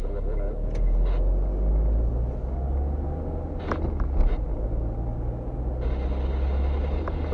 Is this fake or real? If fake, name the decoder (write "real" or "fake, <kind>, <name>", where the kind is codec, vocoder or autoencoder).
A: real